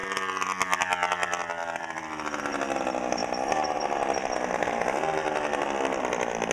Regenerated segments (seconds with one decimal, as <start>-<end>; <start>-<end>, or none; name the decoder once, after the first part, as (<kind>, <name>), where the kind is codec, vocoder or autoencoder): 1.6-2.4 (vocoder, BigVGAN v2); 3.2-6.0